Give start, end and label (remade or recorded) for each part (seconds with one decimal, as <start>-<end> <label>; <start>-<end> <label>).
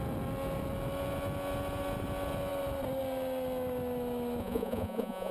0.0-4.4 recorded; 4.4-5.3 remade